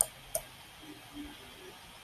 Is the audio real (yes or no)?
yes